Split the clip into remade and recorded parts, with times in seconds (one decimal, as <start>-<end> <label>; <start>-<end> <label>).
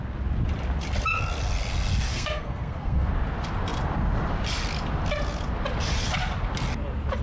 0.0-2.1 recorded; 2.1-3.1 remade; 3.1-7.2 recorded